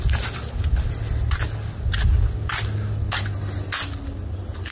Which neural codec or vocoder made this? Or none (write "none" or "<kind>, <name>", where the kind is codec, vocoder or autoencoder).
none